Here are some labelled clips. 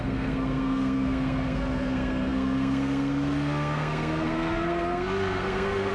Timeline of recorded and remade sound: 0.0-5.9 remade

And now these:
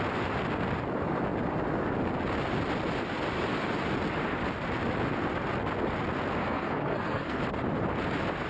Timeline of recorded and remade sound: 0.0-6.4 recorded; 6.4-7.4 remade; 7.4-8.5 recorded

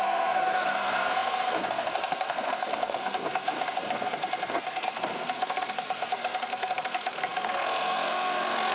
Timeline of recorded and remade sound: 0.0-8.7 remade

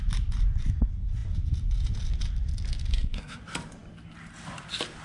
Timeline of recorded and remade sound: 0.0-2.9 recorded; 2.9-3.4 remade; 3.4-5.0 recorded

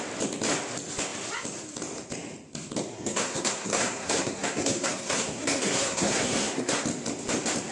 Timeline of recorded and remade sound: 0.0-2.9 recorded; 2.9-6.8 remade; 6.8-7.7 recorded